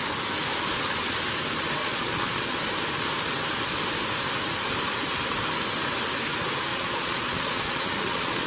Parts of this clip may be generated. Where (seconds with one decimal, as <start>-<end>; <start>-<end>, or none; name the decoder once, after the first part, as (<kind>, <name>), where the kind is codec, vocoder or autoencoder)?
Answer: 1.8-2.6 (vocoder, Vocos); 6.7-8.5